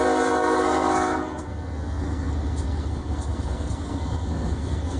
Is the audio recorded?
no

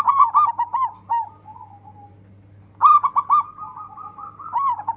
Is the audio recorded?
yes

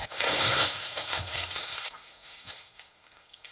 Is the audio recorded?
no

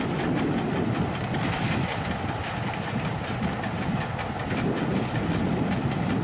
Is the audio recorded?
yes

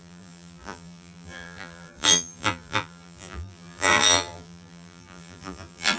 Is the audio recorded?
no